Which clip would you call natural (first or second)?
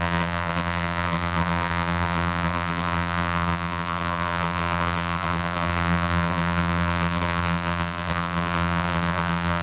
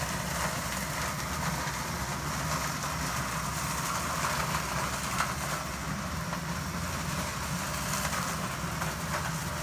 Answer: second